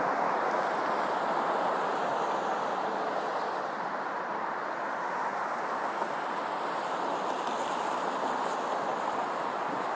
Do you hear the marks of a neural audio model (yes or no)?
no